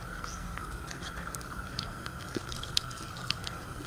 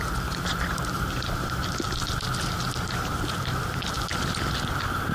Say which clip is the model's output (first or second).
first